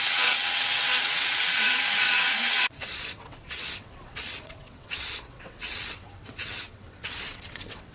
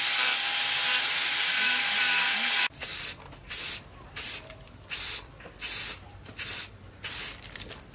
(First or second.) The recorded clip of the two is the second